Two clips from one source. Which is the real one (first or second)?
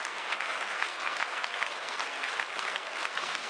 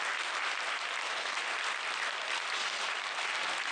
second